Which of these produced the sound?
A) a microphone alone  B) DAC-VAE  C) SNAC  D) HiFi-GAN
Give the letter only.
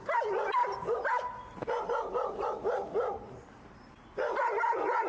A